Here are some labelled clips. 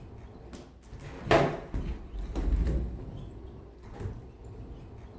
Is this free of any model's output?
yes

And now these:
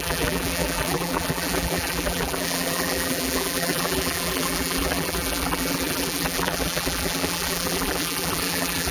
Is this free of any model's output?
no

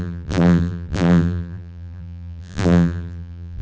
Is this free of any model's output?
no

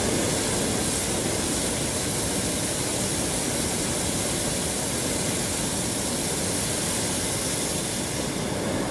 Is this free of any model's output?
yes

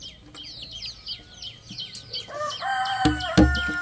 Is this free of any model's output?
yes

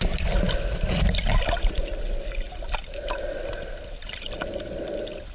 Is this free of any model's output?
yes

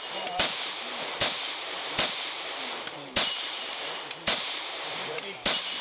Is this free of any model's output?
no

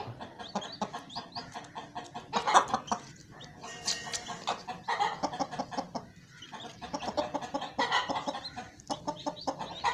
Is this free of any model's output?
yes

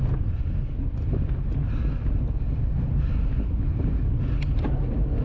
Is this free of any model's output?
yes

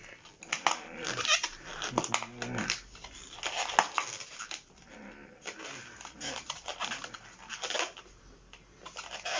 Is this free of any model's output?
yes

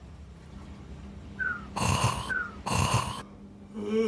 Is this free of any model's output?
yes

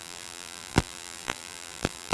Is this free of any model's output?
no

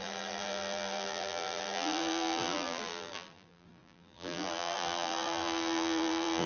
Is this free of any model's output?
no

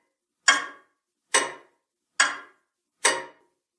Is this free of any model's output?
yes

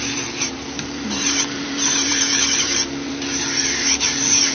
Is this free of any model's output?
no